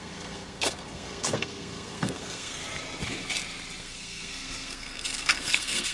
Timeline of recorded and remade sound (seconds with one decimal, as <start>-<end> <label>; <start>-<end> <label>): 0.0-2.6 remade; 2.6-3.8 recorded; 3.8-5.9 remade